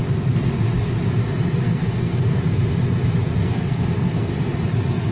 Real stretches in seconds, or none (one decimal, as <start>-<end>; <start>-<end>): 0.0-1.6; 2.4-3.4; 4.3-5.1